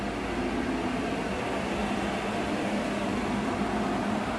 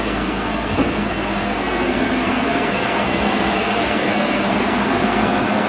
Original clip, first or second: first